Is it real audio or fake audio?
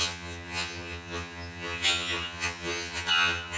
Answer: fake